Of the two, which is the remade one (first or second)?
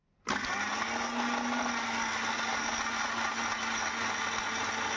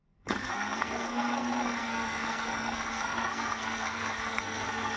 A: second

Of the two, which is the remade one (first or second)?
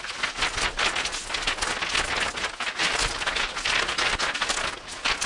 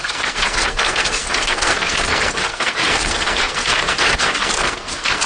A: second